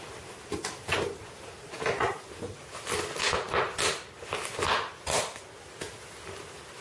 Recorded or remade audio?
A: recorded